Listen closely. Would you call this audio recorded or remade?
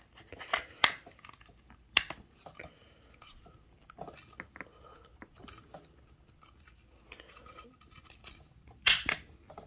recorded